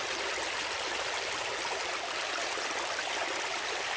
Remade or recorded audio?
recorded